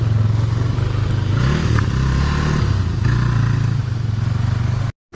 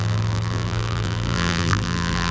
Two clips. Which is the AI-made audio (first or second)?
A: second